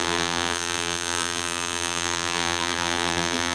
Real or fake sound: fake